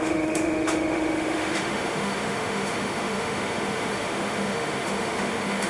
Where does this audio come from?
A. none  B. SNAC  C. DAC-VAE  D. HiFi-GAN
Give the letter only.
C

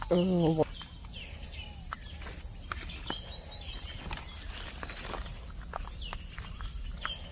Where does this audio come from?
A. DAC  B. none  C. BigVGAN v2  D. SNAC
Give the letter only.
B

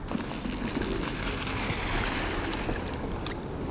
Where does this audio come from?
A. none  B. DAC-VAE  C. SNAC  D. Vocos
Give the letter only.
A